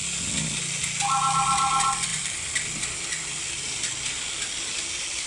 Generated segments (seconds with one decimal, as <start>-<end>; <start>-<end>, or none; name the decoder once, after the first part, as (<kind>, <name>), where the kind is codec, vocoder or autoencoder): 0.0-0.8 (vocoder, BigVGAN v2); 2.1-5.3